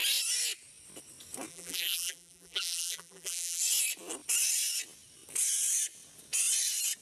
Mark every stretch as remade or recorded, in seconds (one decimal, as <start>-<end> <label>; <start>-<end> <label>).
0.0-1.5 recorded; 1.5-3.6 remade; 3.6-7.0 recorded